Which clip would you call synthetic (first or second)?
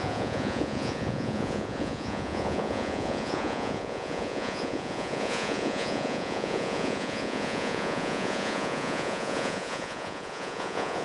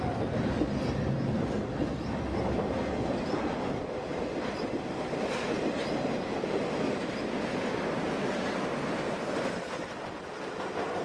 first